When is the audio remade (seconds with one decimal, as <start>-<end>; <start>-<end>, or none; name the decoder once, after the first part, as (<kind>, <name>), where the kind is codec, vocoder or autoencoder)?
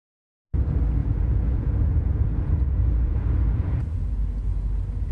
1.0-4.1 (vocoder, Vocos)